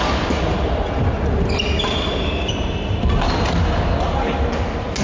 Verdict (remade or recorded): recorded